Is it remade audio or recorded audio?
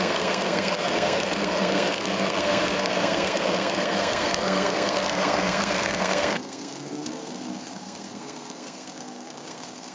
remade